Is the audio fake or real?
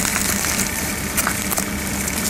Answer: fake